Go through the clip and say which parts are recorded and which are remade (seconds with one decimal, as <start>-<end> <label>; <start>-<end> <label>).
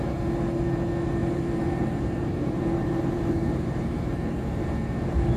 0.0-1.2 recorded; 1.2-4.4 remade; 4.4-5.4 recorded